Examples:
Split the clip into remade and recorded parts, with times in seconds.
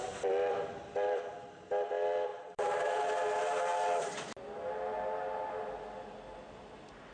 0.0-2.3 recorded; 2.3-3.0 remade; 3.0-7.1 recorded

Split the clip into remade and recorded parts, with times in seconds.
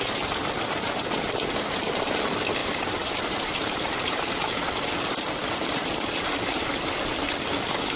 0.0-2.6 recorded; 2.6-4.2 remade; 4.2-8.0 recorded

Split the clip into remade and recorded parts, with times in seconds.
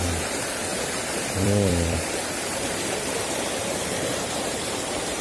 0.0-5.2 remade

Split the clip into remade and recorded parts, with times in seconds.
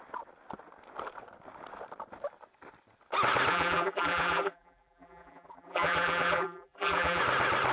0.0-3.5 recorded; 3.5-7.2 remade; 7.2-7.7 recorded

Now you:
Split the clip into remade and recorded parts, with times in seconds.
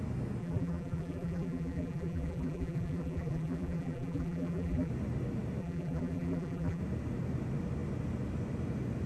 0.0-0.4 recorded; 0.4-4.9 remade; 4.9-5.6 recorded; 5.6-6.8 remade; 6.8-9.1 recorded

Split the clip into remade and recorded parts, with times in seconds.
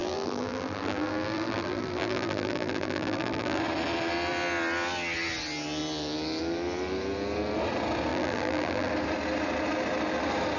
0.0-3.6 remade; 3.6-8.1 recorded; 8.1-8.9 remade; 8.9-10.6 recorded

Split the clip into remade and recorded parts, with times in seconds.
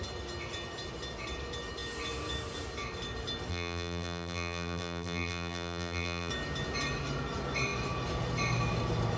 0.0-3.5 recorded; 3.5-6.3 remade; 6.3-9.2 recorded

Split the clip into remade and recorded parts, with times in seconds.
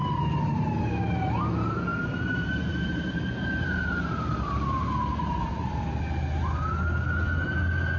0.0-1.0 remade; 1.0-1.9 recorded; 1.9-6.0 remade; 6.0-8.0 recorded